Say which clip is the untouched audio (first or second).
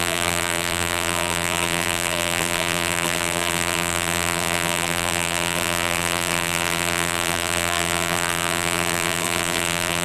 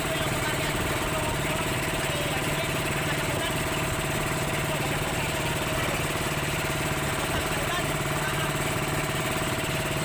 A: second